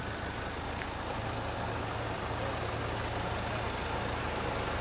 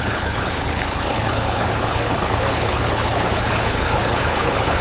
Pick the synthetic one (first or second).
second